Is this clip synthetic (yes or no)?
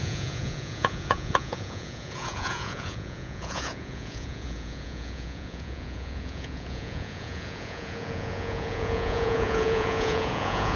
yes